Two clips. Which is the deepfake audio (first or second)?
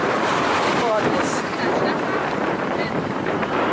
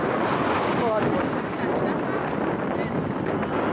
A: first